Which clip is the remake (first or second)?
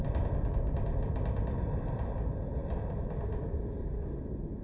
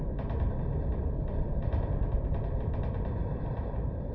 second